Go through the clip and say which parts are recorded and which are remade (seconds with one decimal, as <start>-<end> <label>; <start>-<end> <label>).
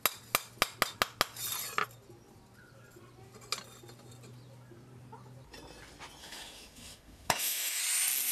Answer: 0.0-6.2 recorded; 6.2-7.8 remade; 7.8-8.3 recorded